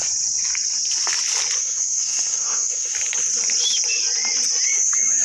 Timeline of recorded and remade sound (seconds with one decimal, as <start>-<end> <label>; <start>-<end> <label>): 0.0-1.6 recorded; 1.6-2.9 remade; 2.9-5.2 recorded

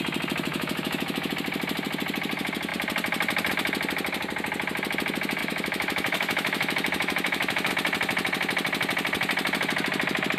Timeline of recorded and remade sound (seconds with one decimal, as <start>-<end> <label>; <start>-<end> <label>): 0.0-0.5 recorded; 0.5-1.3 remade; 1.3-5.4 recorded; 5.4-7.7 remade; 7.7-10.4 recorded

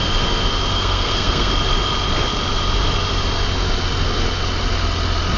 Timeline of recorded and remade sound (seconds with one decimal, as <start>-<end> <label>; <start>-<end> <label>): 0.0-0.7 recorded; 0.7-1.5 remade; 1.5-5.4 recorded

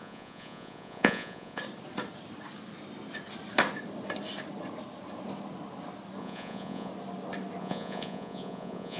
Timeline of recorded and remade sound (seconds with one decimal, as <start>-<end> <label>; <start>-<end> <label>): 0.0-1.6 remade; 1.6-6.2 recorded; 6.2-6.9 remade; 6.9-7.6 recorded; 7.6-9.0 remade

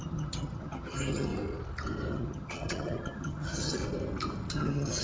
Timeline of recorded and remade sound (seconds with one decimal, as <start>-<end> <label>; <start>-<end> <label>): 0.0-1.3 remade; 1.3-2.1 recorded; 2.1-3.8 remade; 3.8-4.5 recorded; 4.5-5.0 remade

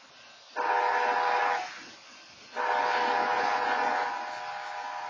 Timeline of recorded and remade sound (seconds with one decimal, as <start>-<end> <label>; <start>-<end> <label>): 0.0-3.2 recorded; 3.2-4.2 remade; 4.2-5.1 recorded